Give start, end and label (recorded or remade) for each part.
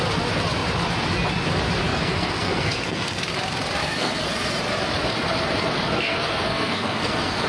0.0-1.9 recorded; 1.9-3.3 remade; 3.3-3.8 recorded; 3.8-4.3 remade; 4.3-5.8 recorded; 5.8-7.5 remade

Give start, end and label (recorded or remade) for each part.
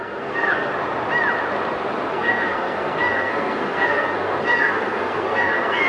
0.0-0.7 remade; 0.7-2.1 recorded; 2.1-5.9 remade